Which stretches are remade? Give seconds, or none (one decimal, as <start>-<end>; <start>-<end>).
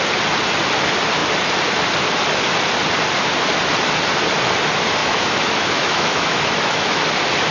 5.0-7.0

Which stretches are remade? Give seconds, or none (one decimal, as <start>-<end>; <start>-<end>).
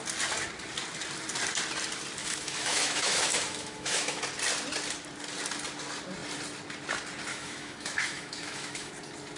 2.2-4.2; 7.3-8.9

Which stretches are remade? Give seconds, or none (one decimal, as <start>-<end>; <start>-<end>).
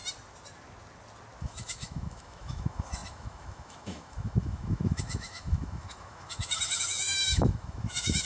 1.4-8.2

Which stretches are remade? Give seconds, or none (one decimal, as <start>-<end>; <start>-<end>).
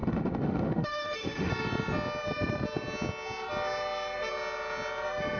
0.0-1.5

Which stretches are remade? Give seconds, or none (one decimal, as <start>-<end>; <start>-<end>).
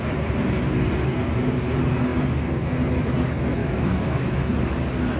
3.6-4.5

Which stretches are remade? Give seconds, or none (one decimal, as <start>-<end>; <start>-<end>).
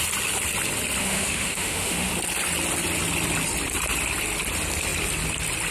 1.0-2.1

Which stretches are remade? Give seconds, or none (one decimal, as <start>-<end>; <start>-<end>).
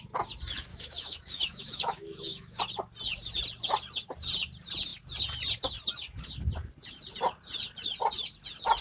0.7-2.6